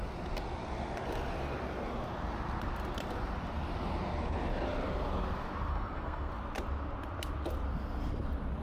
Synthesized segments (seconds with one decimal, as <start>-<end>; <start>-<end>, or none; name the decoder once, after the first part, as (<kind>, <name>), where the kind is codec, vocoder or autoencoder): 5.7-6.3 (codec, SNAC)